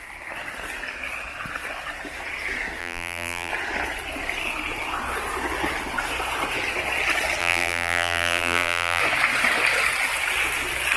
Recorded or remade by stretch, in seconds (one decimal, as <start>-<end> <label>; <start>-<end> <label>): 0.0-2.8 recorded; 2.8-3.5 remade; 3.5-7.4 recorded; 7.4-9.0 remade; 9.0-11.0 recorded

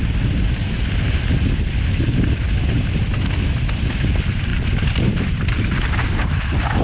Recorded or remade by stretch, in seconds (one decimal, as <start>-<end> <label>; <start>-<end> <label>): 0.0-6.8 remade

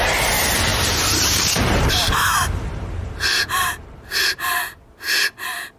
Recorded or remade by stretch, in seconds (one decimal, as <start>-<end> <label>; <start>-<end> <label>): 0.0-0.7 recorded; 0.7-1.2 remade; 1.2-1.6 recorded; 1.6-4.5 remade; 4.5-5.8 recorded

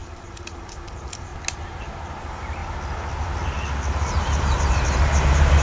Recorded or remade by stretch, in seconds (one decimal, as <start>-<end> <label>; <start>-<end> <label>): 0.0-1.3 remade; 1.3-2.2 recorded; 2.2-2.6 remade; 2.6-3.9 recorded; 3.9-5.6 remade

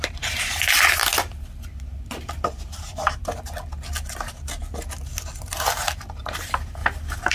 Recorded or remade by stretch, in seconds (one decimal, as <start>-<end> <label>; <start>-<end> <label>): 0.0-1.0 remade; 1.0-5.4 recorded; 5.4-6.8 remade; 6.8-7.3 recorded

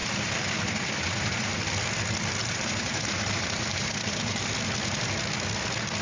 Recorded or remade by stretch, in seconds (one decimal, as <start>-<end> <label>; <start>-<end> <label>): 0.0-1.6 remade; 1.6-2.4 recorded; 2.4-4.5 remade; 4.5-6.0 recorded

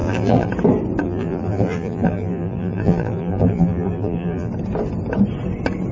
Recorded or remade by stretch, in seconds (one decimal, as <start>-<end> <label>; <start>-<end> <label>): 0.0-0.5 remade; 0.5-1.0 recorded; 1.0-4.5 remade; 4.5-5.9 recorded

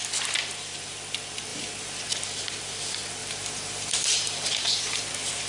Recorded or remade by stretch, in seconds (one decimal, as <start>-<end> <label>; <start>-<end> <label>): 0.0-1.5 recorded; 1.5-2.1 remade; 2.1-3.2 recorded; 3.2-5.1 remade; 5.1-5.5 recorded